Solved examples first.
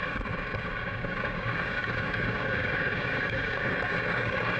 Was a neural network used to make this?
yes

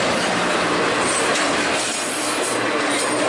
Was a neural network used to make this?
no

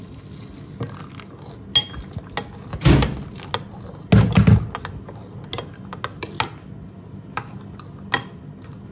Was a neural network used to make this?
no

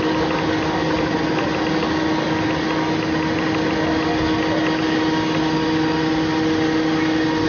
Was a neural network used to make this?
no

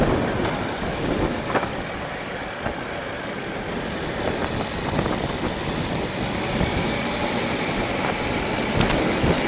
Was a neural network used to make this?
no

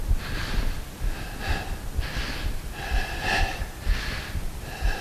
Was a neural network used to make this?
no